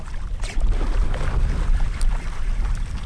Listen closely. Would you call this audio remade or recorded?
recorded